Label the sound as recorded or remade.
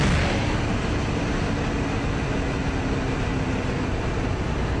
recorded